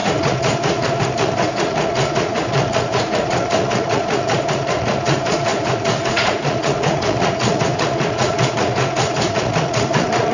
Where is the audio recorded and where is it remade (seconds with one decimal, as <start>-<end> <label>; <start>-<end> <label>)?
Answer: 0.0-10.3 remade